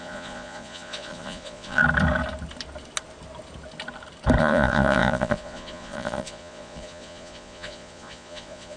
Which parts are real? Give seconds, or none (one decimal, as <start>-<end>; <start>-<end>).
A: 1.8-4.4